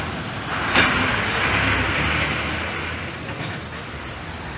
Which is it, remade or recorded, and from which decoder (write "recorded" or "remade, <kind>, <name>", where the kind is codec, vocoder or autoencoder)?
recorded